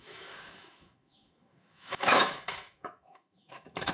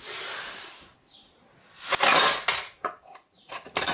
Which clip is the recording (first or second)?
second